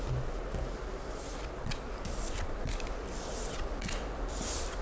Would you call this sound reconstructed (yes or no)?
no